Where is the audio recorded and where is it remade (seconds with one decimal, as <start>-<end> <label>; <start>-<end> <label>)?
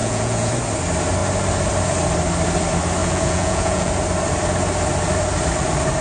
0.0-0.5 remade; 0.5-3.0 recorded; 3.0-3.9 remade; 3.9-6.0 recorded